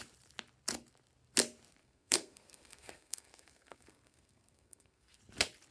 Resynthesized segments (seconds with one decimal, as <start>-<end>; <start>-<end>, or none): 1.8-5.2